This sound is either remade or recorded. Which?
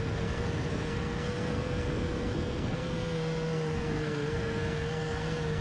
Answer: remade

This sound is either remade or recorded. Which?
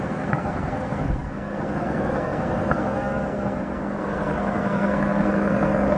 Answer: remade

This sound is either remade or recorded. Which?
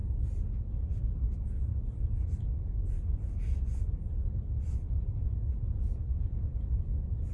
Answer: recorded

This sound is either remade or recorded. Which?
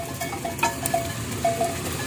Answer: recorded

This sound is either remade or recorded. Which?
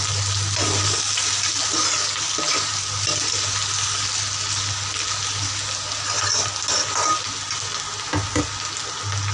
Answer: recorded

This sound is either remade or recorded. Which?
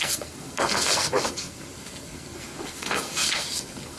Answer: remade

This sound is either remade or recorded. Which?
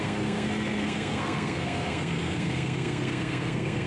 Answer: remade